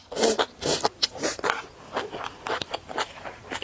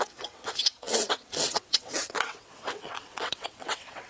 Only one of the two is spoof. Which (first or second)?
second